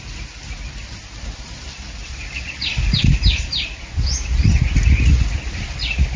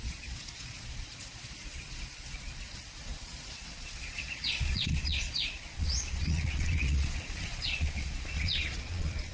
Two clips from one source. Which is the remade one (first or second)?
second